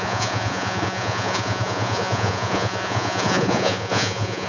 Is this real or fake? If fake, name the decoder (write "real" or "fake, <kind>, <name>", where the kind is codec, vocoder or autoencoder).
fake, vocoder, Vocos